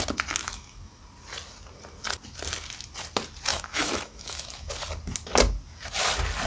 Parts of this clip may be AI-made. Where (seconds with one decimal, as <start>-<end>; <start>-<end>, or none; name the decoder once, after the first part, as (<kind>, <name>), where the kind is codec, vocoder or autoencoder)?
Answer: 0.4-1.0 (autoencoder, DAC-VAE); 3.5-4.7